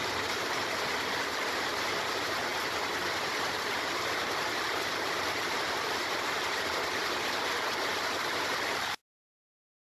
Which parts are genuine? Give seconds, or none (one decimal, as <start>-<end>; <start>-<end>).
2.5-3.4